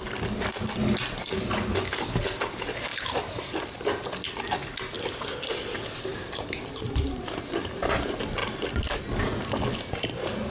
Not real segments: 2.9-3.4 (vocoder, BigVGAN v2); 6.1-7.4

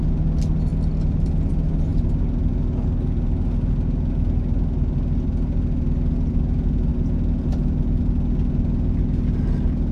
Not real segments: none

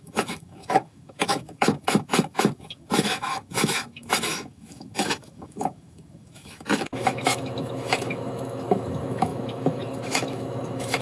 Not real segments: 0.0-11.0 (autoencoder, DAC-VAE)